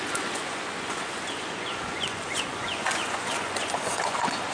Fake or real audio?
fake